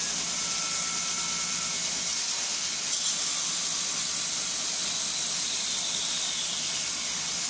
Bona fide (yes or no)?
yes